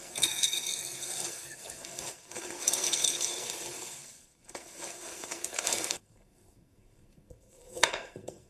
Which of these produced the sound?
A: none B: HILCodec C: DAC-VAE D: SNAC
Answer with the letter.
D